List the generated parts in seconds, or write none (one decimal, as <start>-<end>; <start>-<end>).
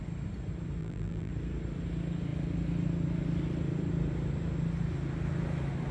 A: 0.8-1.3